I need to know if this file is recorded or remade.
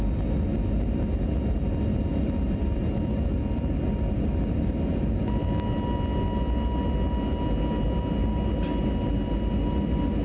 recorded